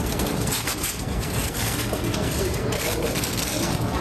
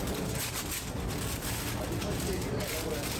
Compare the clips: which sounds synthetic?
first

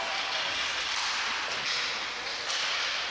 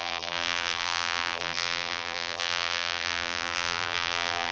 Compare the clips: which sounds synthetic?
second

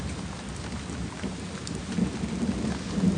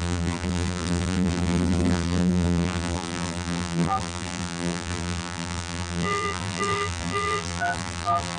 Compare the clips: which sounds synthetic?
second